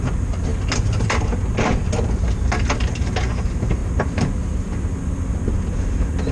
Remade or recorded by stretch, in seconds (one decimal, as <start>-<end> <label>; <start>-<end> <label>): 0.0-6.3 recorded